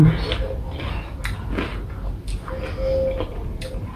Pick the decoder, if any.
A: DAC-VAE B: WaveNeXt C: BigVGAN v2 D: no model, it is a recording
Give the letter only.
D